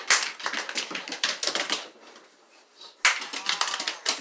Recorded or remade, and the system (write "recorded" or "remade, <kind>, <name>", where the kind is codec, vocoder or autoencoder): recorded